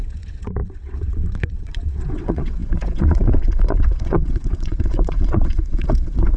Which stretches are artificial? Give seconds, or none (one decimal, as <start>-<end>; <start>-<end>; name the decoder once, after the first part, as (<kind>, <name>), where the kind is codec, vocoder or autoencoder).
0.0-6.4 (vocoder, WaveNeXt)